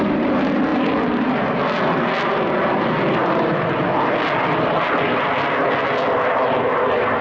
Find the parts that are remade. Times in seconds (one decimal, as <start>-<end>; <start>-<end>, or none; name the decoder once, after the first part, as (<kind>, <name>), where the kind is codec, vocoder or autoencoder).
none